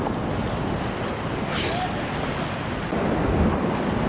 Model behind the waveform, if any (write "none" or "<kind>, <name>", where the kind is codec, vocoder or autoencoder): none